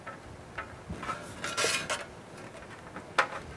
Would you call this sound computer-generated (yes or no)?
no